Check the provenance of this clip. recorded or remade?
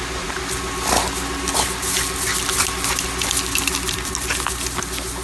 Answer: recorded